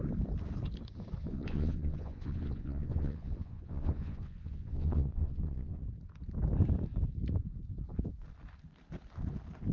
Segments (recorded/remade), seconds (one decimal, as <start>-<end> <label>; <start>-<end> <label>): 0.0-1.2 recorded; 1.2-5.8 remade; 5.8-9.7 recorded